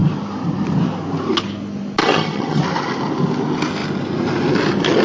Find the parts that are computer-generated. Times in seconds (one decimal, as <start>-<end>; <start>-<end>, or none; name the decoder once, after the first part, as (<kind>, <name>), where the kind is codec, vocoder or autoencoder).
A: 2.0-2.6 (vocoder, HiFi-GAN)